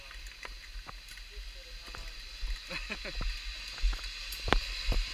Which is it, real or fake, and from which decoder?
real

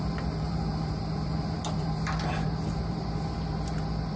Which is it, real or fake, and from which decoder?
fake, vocoder, BigVGAN v2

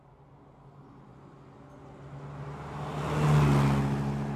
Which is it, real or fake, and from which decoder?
real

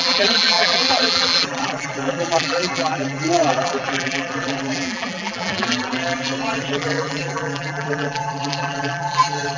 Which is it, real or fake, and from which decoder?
fake, vocoder, BigVGAN v2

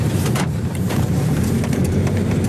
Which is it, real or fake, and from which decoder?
fake, vocoder, BigVGAN v2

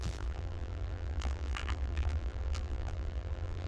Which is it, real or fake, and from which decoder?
fake, vocoder, BigVGAN v2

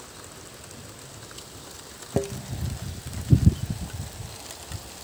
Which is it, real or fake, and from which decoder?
real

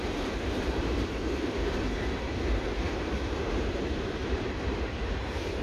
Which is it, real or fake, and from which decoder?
fake, vocoder, BigVGAN v2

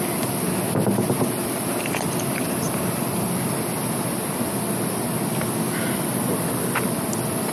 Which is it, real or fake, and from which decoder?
real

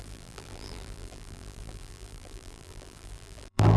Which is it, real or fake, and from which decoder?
fake, vocoder, BigVGAN v2